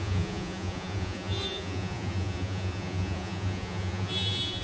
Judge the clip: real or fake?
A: fake